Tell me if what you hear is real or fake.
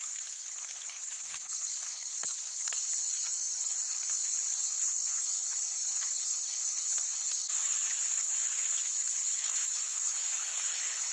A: fake